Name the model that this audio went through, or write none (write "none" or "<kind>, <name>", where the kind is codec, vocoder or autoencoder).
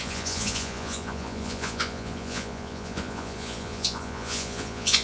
vocoder, Vocos